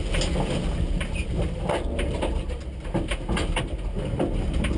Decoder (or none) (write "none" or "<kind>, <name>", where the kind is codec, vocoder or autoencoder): none